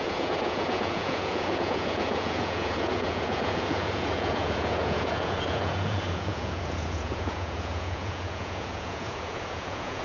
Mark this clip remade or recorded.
remade